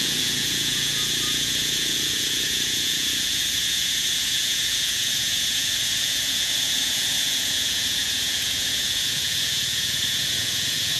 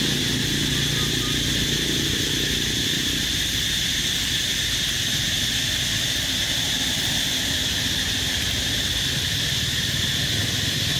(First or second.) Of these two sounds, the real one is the second